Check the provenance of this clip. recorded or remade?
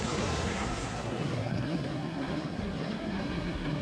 remade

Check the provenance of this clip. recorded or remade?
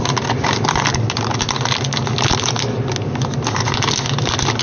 recorded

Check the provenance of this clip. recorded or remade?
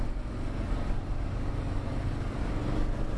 recorded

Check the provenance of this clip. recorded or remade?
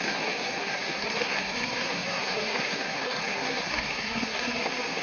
remade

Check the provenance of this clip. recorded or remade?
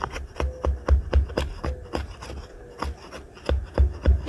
recorded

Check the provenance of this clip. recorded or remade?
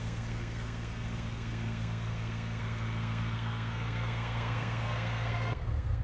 remade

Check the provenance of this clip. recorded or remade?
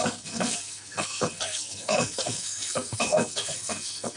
remade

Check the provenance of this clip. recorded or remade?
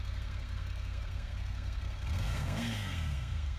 remade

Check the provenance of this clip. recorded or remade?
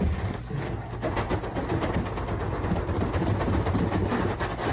recorded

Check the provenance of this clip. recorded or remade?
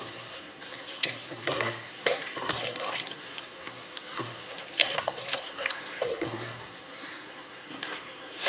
remade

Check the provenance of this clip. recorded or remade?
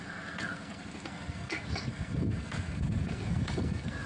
remade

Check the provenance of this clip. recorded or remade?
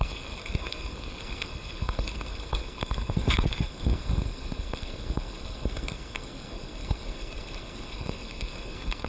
remade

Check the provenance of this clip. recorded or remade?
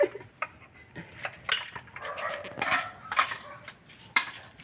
recorded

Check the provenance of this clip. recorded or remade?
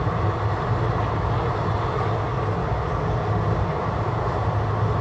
recorded